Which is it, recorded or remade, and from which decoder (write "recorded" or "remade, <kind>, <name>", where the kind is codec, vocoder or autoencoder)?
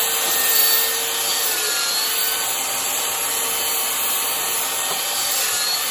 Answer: recorded